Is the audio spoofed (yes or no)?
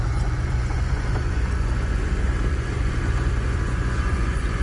yes